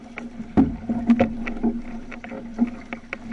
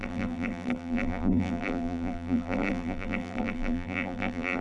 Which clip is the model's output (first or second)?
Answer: second